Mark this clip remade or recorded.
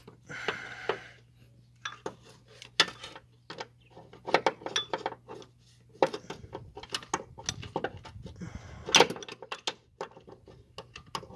recorded